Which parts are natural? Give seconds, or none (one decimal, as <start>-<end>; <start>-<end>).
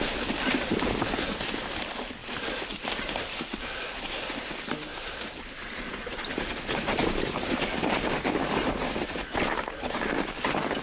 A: 0.0-2.2; 3.4-4.9; 7.9-10.8